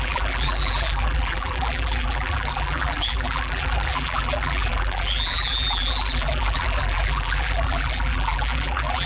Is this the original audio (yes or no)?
no